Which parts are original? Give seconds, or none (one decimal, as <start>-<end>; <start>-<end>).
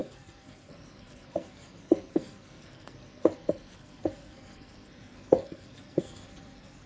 none